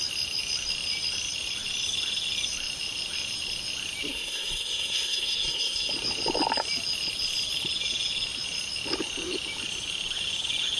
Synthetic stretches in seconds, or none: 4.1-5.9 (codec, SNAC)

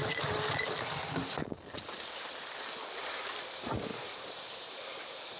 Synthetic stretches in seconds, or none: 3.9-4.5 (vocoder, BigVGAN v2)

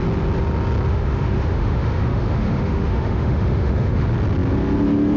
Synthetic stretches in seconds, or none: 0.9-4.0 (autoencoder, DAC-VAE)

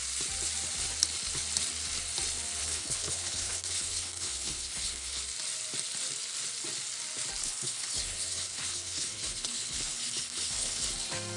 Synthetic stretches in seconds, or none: 2.6-5.2 (codec, HILCodec); 7.4-10.8

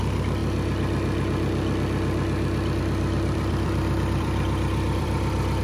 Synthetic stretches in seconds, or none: 0.0-0.4 (vocoder, BigVGAN v2); 2.8-5.6

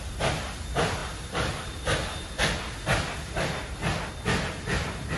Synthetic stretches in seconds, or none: none

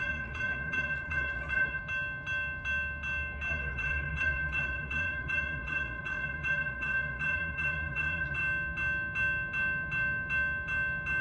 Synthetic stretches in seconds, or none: 0.0-1.8 (vocoder, Vocos); 3.5-8.4

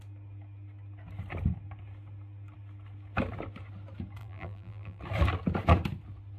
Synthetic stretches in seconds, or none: 4.2-5.0 (vocoder, BigVGAN v2)